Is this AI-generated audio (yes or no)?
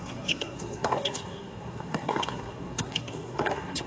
yes